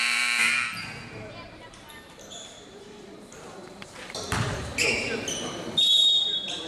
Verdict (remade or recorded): remade